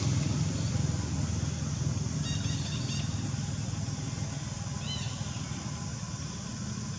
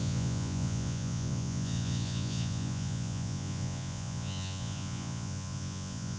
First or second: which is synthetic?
second